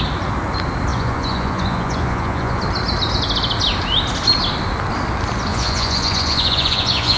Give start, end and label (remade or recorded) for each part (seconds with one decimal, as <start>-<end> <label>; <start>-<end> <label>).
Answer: 0.0-0.9 recorded; 0.9-2.6 remade; 2.6-5.5 recorded; 5.5-7.2 remade